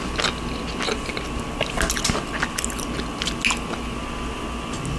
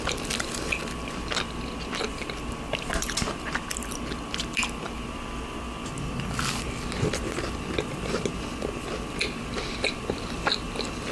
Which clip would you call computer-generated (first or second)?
second